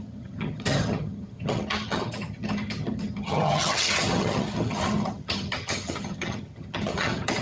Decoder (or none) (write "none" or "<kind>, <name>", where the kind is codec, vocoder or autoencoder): vocoder, HiFi-GAN